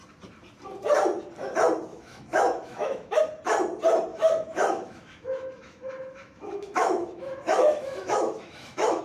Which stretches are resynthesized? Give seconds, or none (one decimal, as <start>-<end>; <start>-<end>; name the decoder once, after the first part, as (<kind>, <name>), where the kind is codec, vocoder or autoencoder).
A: 1.9-3.2 (autoencoder, DAC-VAE); 4.1-9.0